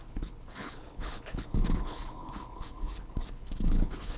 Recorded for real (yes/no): no